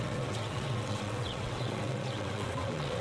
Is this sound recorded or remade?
remade